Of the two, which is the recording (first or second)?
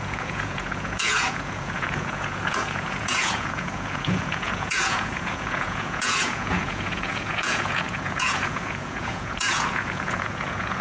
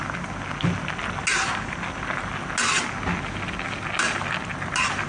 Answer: second